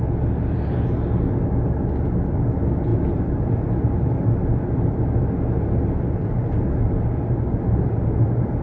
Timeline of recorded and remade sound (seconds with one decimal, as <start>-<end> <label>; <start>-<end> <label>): 0.0-8.6 recorded